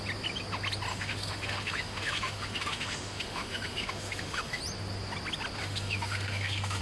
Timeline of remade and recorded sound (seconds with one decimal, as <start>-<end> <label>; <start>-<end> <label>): 0.0-0.9 recorded; 0.9-4.6 remade; 4.6-5.6 recorded; 5.6-6.8 remade